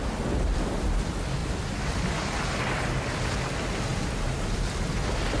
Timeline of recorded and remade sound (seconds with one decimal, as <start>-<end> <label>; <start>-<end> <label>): 0.0-5.4 recorded